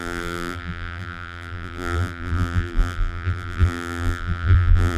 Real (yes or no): no